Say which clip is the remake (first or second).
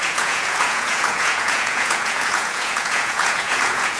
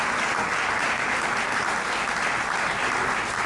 first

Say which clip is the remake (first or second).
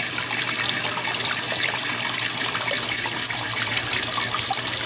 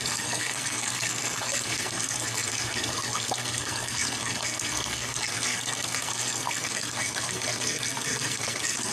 second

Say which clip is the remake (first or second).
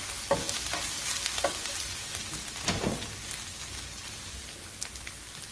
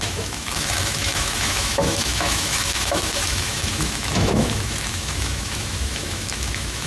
second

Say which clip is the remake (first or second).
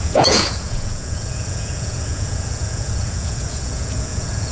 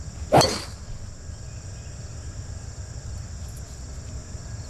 first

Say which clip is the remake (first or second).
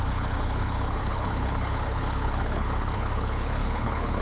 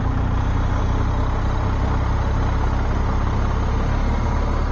first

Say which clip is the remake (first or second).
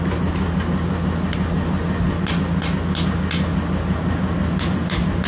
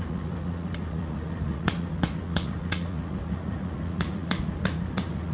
second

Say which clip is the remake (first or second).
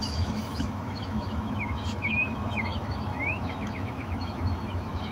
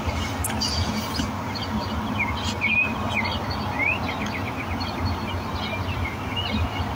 first